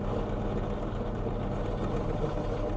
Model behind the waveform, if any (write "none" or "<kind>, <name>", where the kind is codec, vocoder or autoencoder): none